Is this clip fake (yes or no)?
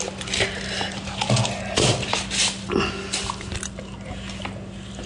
no